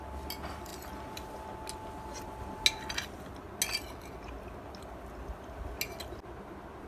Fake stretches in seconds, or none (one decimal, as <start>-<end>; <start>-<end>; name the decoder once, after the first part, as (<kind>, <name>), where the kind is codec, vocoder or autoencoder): none